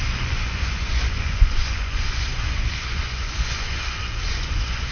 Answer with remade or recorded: remade